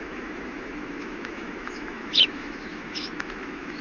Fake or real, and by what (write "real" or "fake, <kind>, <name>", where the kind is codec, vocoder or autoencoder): fake, autoencoder, DAC-VAE